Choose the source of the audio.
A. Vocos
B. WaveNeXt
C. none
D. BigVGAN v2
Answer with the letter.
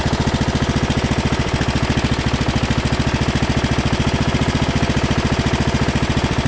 C